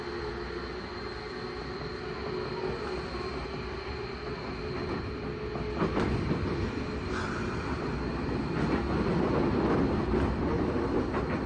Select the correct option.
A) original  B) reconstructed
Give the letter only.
A